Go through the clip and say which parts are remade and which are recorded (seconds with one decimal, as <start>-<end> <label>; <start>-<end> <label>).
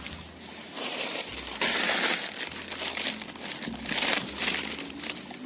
0.0-5.5 remade